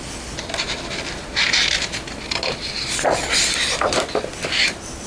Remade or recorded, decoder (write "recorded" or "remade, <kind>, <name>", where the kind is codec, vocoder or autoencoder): recorded